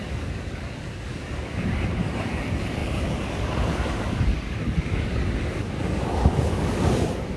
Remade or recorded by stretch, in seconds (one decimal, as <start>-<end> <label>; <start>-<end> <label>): 0.0-7.4 remade